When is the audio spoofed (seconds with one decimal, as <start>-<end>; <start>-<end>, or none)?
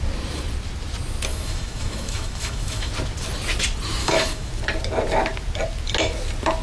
1.3-2.9; 4.0-4.5